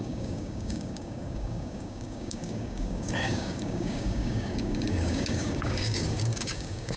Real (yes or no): no